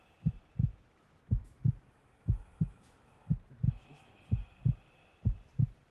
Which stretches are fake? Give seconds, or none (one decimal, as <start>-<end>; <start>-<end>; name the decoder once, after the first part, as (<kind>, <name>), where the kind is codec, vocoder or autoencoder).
0.7-4.1 (autoencoder, DAC-VAE)